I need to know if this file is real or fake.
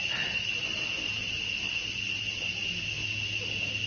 real